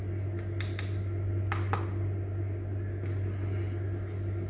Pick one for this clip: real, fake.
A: real